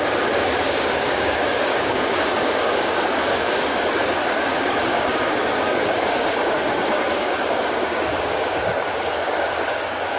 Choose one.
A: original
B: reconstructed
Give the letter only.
B